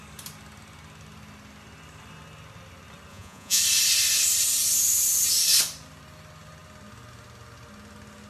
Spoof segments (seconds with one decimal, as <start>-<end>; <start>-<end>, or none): 3.1-3.6